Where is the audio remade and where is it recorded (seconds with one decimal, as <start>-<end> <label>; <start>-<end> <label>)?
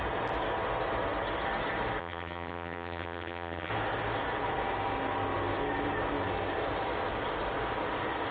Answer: 0.0-2.0 recorded; 2.0-3.7 remade; 3.7-8.3 recorded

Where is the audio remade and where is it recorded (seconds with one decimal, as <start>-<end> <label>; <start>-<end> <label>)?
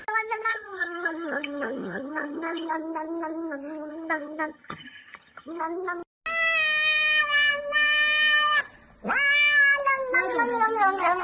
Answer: 0.0-0.5 recorded; 0.5-2.7 remade; 2.7-3.9 recorded; 3.9-5.6 remade; 5.6-11.2 recorded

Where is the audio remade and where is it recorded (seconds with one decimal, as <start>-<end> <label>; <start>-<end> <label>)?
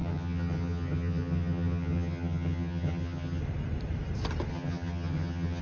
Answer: 0.0-3.4 remade; 3.4-4.5 recorded; 4.5-5.6 remade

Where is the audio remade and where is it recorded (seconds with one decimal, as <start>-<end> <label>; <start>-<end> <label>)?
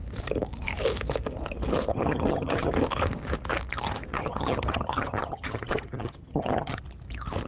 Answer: 0.0-1.9 recorded; 1.9-2.7 remade; 2.7-4.1 recorded; 4.1-6.8 remade; 6.8-7.5 recorded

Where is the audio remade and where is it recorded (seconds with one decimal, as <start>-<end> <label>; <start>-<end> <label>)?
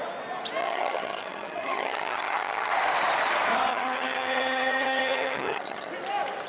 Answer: 0.0-0.6 recorded; 0.6-2.7 remade; 2.7-3.7 recorded; 3.7-5.9 remade; 5.9-6.5 recorded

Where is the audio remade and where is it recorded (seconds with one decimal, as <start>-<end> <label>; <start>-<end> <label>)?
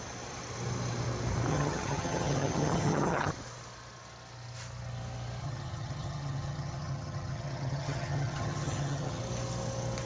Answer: 0.0-1.5 recorded; 1.5-3.3 remade; 3.3-5.4 recorded; 5.4-9.2 remade; 9.2-10.1 recorded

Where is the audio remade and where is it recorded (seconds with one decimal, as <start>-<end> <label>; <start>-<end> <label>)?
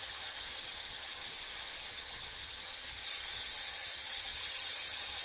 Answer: 0.0-1.2 remade; 1.2-1.9 recorded; 1.9-5.2 remade